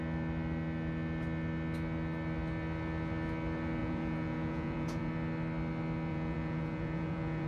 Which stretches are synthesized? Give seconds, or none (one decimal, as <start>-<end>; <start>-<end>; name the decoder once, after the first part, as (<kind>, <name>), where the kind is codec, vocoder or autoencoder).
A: 3.8-5.1 (vocoder, Vocos); 6.1-7.5